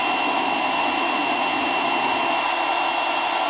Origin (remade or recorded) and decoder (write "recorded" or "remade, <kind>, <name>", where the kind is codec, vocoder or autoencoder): recorded